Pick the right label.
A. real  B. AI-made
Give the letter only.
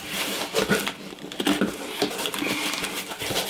A